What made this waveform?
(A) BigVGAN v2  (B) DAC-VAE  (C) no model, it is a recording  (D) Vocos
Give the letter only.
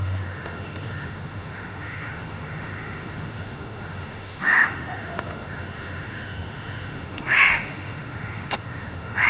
B